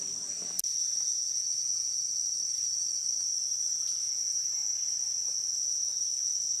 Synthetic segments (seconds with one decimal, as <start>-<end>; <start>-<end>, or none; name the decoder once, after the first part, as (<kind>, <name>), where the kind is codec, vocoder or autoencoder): 2.2-3.9 (vocoder, BigVGAN v2)

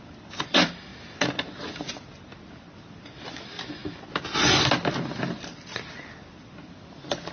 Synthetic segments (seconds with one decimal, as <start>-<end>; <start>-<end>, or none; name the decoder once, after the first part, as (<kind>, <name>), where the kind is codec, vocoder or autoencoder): 0.0-0.9 (vocoder, BigVGAN v2); 2.1-3.8; 5.2-7.3

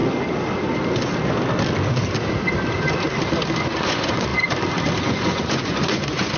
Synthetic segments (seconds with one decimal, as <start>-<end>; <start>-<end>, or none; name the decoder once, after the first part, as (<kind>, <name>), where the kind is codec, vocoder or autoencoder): 3.8-4.3 (vocoder, Vocos); 5.0-6.4

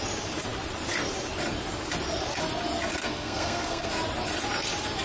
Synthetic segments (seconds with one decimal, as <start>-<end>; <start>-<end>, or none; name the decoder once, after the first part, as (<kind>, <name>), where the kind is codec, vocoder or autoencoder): 3.0-3.9 (codec, SNAC)